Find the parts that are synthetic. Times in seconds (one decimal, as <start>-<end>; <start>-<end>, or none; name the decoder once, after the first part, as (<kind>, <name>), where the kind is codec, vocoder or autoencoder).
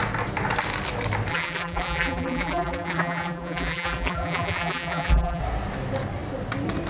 1.3-5.4 (vocoder, BigVGAN v2)